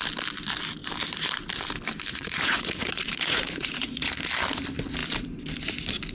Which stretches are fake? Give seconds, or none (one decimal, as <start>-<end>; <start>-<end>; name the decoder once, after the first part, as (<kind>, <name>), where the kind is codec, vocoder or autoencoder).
2.1-4.2 (vocoder, Vocos)